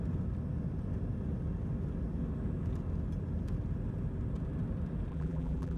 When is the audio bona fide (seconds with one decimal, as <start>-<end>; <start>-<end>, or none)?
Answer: 0.0-5.1